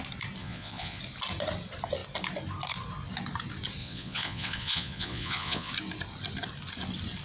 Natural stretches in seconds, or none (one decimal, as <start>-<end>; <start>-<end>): 0.0-0.4; 1.0-3.8; 5.7-7.2